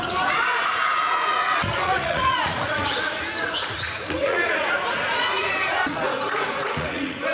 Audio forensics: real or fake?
fake